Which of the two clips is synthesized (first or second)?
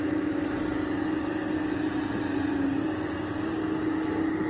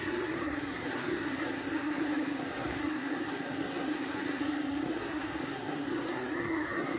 second